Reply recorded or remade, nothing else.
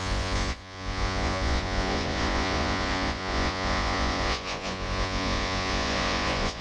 remade